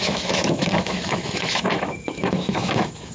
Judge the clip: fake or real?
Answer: fake